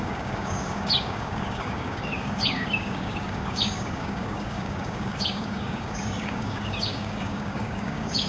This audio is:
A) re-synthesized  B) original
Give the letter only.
A